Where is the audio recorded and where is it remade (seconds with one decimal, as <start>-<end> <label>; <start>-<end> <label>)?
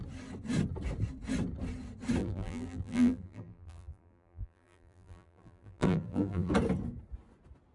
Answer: 0.0-2.2 recorded; 2.2-6.5 remade; 6.5-7.7 recorded